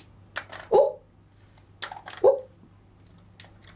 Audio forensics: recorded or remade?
recorded